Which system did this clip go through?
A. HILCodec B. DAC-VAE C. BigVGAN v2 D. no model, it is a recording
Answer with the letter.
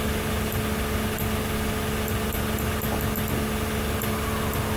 D